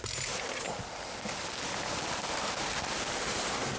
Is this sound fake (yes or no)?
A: no